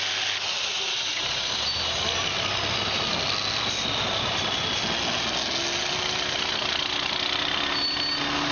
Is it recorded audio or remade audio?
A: recorded